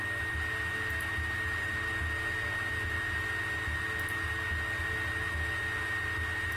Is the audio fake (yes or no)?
no